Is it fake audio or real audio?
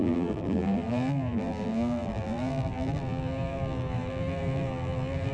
fake